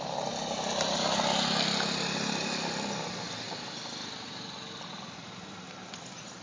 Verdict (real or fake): real